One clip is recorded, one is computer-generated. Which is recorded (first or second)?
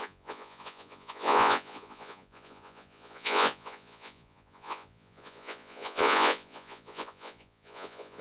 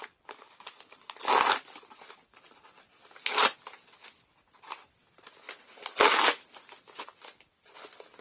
second